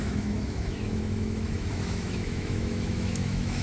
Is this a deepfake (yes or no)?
yes